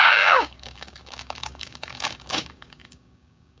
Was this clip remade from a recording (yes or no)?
yes